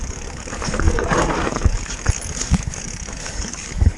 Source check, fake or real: fake